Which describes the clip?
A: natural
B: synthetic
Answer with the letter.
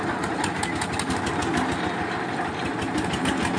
A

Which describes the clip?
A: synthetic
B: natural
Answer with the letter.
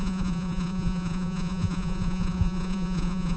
A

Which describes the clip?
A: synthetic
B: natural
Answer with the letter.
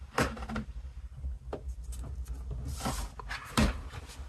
B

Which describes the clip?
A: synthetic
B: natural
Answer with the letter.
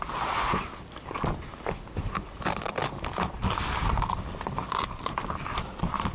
B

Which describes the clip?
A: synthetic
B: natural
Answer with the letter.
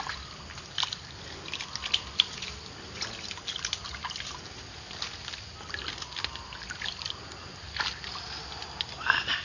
B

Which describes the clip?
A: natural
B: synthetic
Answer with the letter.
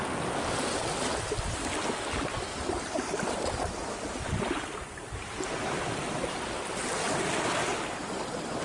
A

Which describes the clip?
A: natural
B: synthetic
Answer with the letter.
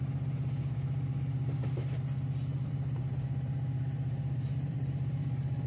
B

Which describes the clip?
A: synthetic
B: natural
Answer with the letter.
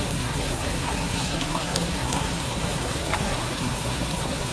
A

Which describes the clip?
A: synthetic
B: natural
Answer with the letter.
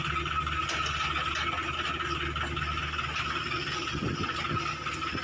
B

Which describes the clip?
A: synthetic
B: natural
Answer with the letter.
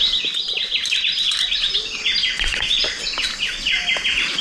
B